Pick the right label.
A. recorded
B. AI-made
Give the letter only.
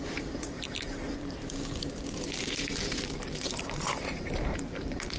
B